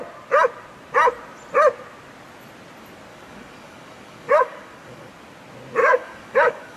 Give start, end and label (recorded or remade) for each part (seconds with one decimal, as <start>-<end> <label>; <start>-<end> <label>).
0.0-3.1 recorded; 3.1-5.1 remade; 5.1-5.8 recorded; 5.8-6.8 remade